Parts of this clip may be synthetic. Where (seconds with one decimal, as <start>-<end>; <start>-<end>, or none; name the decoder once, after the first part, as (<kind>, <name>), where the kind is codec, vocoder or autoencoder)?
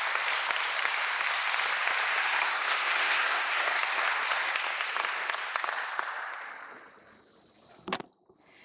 2.2-3.8 (codec, SNAC)